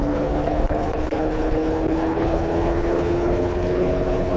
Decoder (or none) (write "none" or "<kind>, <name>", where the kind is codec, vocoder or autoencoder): codec, HILCodec